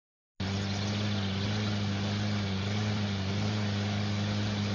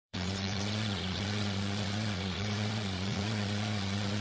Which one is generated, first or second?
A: second